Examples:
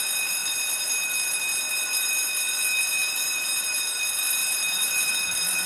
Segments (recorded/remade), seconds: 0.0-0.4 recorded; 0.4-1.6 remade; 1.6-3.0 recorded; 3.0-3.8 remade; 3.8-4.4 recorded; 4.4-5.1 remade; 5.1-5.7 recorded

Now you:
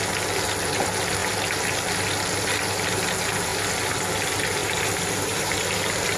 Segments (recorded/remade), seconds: 0.0-4.6 recorded; 4.6-5.5 remade; 5.5-6.2 recorded

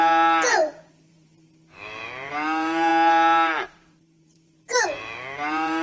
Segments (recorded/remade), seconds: 0.0-5.8 remade